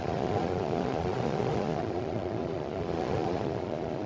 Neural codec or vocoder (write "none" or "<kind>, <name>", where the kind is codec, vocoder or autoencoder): vocoder, Vocos